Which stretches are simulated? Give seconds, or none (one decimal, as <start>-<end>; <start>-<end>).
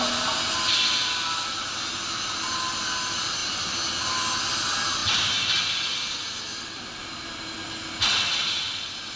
none